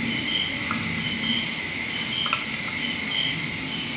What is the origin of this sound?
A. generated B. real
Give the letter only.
B